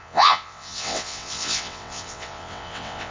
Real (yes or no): no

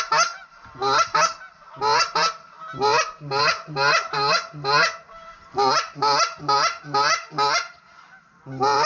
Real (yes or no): yes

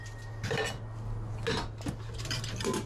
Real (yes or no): yes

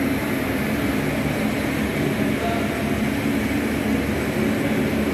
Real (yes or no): yes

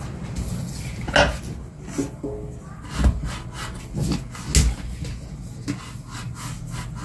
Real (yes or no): yes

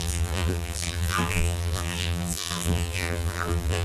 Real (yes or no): no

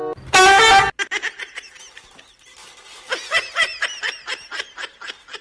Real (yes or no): yes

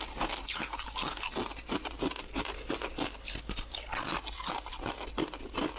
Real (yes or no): yes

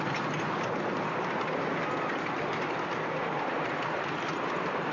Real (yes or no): yes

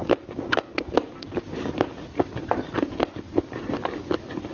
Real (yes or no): yes